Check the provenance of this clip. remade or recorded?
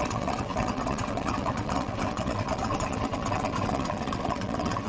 remade